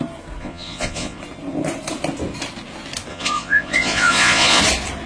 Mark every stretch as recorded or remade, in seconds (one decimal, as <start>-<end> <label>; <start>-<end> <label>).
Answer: 0.0-0.4 recorded; 0.4-1.2 remade; 1.2-3.1 recorded; 3.1-4.6 remade; 4.6-5.1 recorded